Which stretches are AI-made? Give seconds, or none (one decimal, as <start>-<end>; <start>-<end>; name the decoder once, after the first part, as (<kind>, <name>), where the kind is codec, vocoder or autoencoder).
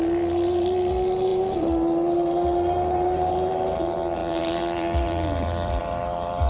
0.0-6.5 (vocoder, BigVGAN v2)